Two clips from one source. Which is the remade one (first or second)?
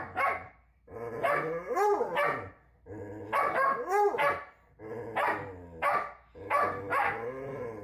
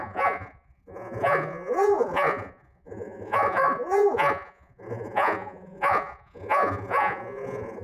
second